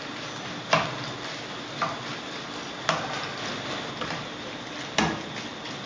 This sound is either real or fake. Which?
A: real